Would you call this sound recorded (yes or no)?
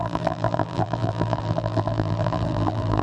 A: no